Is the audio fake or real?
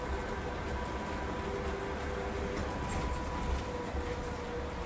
real